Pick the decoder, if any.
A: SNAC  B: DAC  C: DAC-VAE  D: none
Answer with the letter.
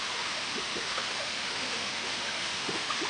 C